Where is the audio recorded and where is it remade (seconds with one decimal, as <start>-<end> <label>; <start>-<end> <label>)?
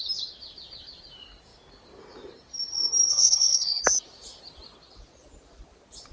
0.0-3.1 recorded; 3.1-3.8 remade; 3.8-6.1 recorded